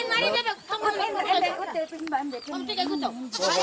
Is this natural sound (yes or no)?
yes